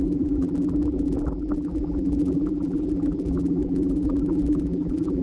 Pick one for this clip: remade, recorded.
remade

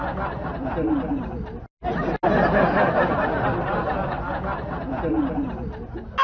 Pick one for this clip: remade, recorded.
recorded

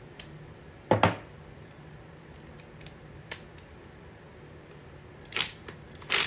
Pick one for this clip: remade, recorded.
recorded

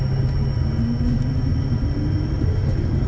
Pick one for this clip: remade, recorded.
recorded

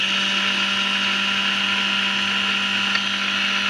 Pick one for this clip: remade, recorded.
recorded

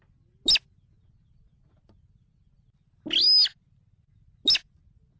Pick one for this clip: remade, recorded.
recorded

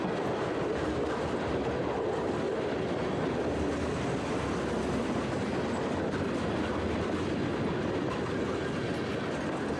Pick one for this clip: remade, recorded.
recorded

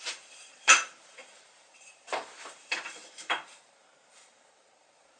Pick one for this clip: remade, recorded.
remade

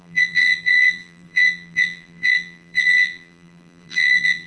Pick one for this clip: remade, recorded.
remade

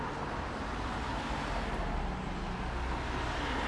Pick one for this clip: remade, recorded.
recorded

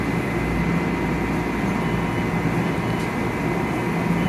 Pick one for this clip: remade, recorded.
recorded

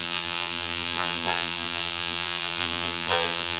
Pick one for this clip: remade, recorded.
remade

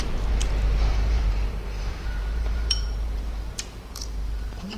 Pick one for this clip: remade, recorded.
remade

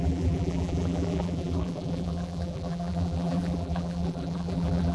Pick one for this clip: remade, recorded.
remade